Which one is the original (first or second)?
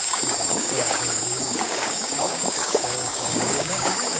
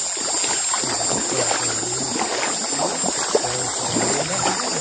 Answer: second